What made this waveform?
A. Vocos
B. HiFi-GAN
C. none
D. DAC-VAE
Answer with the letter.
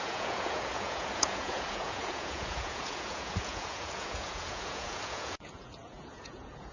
A